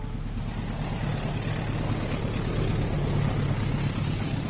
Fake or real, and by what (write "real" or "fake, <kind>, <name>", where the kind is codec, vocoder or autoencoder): real